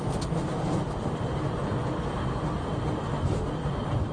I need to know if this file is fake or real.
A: real